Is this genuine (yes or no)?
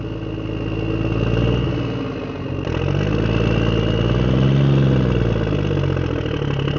yes